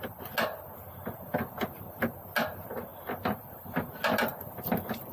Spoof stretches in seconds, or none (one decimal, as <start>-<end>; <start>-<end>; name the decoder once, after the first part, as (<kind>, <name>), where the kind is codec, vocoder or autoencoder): none

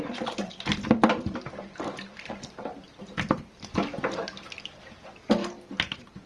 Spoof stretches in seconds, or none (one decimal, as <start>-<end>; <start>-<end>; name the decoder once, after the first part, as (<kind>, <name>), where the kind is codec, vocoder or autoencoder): 0.0-5.4 (vocoder, BigVGAN v2)

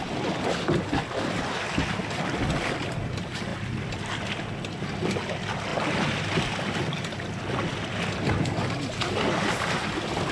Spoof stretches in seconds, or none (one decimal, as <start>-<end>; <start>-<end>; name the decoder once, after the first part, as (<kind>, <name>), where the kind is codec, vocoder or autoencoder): 3.5-4.5 (vocoder, BigVGAN v2)

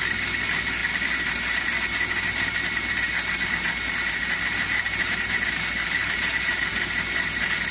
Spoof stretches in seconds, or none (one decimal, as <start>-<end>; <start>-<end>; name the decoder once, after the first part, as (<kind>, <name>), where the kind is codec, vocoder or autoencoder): none

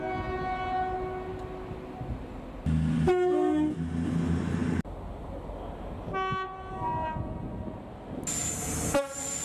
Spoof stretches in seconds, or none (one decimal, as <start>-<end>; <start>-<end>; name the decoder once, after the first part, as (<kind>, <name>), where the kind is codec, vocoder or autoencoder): none